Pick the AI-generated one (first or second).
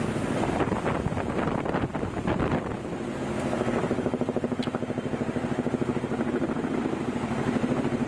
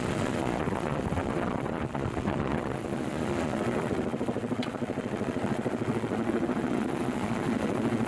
second